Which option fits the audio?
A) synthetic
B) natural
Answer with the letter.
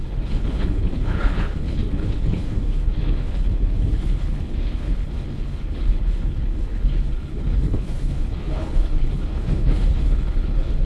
A